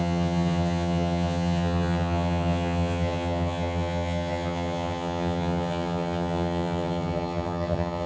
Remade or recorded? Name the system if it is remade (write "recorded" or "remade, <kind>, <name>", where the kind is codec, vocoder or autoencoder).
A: remade, vocoder, HiFi-GAN